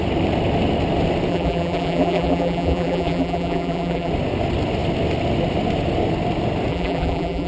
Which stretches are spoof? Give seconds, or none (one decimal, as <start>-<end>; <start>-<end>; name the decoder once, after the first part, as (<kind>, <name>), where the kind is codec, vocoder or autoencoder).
1.3-4.1 (vocoder, BigVGAN v2); 6.7-7.5